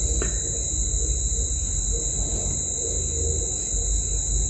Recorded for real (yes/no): yes